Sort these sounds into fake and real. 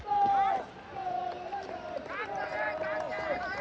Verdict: real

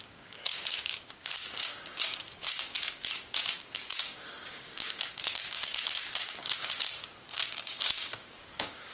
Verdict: fake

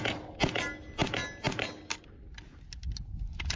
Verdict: real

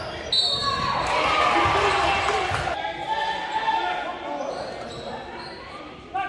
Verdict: real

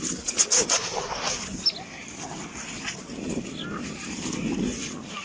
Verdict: real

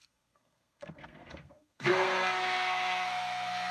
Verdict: fake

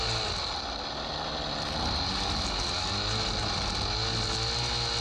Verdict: real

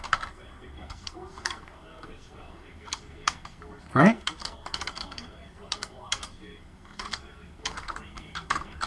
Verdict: fake